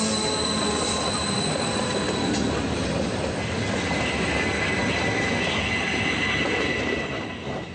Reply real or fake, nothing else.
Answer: real